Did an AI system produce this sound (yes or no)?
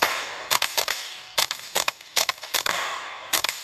yes